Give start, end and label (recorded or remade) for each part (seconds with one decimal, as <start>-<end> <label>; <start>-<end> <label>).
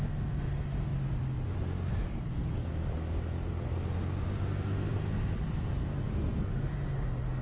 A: 0.0-4.9 recorded; 4.9-5.6 remade; 5.6-7.4 recorded